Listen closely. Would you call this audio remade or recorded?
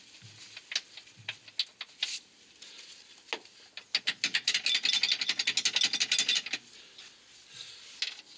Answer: recorded